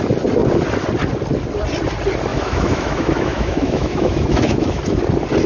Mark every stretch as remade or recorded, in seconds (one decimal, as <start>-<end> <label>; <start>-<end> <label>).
0.0-2.3 recorded; 2.3-4.8 remade; 4.8-5.5 recorded